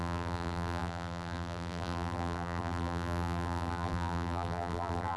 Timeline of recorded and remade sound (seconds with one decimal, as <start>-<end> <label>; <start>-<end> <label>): 0.0-5.2 remade